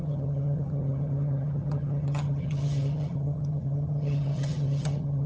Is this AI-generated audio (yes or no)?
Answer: yes